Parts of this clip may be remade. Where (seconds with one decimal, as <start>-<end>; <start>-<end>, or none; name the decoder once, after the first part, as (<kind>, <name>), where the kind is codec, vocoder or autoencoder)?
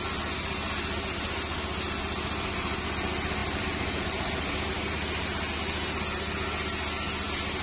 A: 3.4-4.7 (vocoder, BigVGAN v2)